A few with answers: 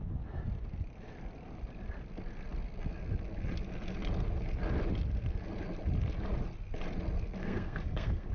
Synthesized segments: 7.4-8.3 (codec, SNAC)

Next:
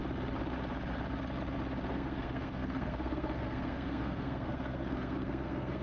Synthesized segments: 1.9-5.8 (codec, SNAC)

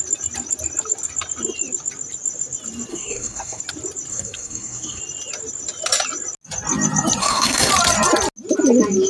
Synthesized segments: 2.9-3.6 (codec, SNAC); 4.1-5.0; 7.2-7.7